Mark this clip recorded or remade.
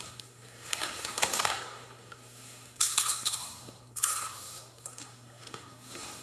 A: remade